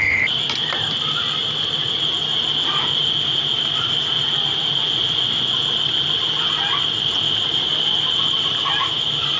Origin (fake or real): real